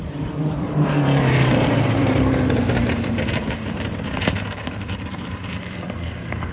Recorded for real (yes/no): no